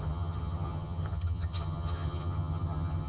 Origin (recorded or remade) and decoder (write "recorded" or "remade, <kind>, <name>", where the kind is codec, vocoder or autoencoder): remade, vocoder, HiFi-GAN